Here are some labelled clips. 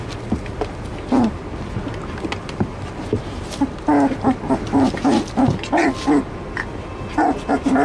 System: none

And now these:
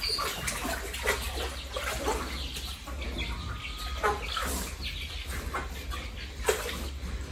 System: none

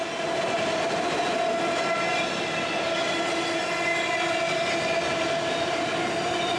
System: none